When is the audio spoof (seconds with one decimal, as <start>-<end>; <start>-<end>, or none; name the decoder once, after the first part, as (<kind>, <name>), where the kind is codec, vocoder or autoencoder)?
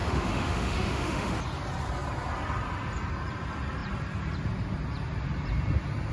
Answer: 0.0-1.3 (autoencoder, DAC-VAE)